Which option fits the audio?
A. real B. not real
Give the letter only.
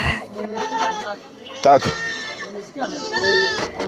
B